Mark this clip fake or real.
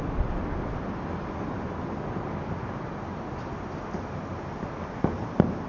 real